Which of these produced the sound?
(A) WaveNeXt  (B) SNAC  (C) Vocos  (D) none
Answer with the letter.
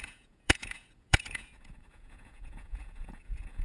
C